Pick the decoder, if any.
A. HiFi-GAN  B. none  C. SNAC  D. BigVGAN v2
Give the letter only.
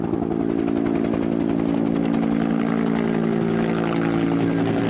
B